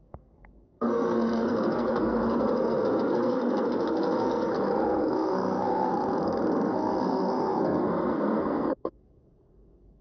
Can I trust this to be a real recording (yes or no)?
no